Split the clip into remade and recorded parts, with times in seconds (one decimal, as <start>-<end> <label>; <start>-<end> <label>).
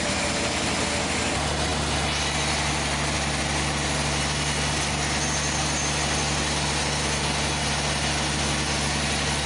0.0-9.5 recorded